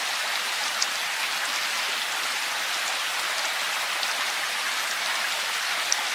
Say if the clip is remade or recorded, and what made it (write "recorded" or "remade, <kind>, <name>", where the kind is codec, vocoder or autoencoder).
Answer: recorded